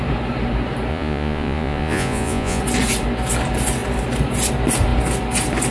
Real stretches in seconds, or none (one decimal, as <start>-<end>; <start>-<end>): 0.0-0.9; 2.6-5.7

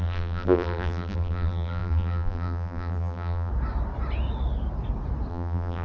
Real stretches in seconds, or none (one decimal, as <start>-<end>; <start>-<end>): 3.5-5.3

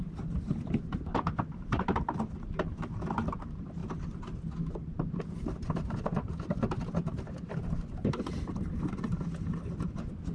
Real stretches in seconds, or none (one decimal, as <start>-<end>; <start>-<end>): 0.0-10.3

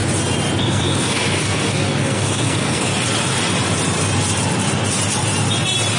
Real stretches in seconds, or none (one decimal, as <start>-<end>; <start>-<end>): 0.0-0.6; 2.9-6.0